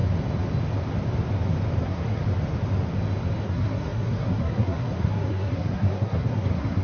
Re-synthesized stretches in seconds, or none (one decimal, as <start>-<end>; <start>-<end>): 1.8-2.2; 3.4-6.8